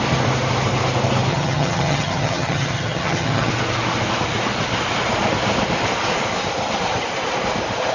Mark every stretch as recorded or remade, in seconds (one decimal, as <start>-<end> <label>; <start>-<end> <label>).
0.0-1.3 recorded; 1.3-3.5 remade; 3.5-7.9 recorded